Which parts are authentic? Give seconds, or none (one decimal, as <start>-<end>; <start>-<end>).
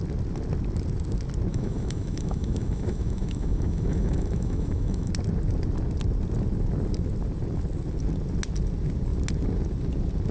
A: 0.0-1.5; 5.1-10.3